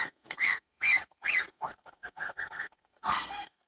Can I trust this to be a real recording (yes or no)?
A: no